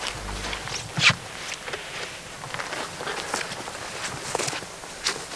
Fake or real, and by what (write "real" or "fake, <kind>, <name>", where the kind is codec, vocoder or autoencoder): real